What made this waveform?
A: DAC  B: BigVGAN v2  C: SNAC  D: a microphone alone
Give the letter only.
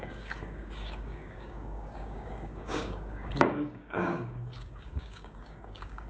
A